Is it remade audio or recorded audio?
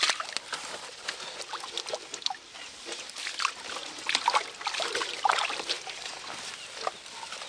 recorded